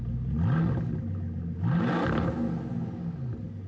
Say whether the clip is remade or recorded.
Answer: recorded